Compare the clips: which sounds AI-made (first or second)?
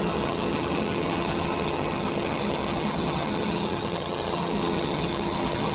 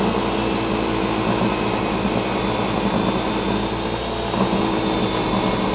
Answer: first